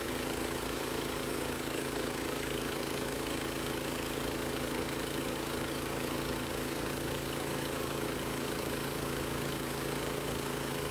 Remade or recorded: remade